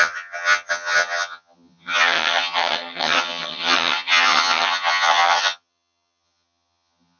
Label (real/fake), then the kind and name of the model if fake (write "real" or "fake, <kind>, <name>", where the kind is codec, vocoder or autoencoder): fake, vocoder, HiFi-GAN